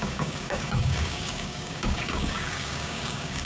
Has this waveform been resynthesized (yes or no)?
yes